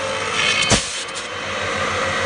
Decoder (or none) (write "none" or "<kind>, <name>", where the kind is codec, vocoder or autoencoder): none